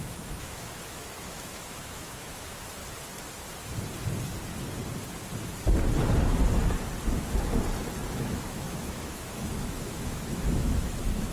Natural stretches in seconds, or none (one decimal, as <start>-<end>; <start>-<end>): 2.8-8.1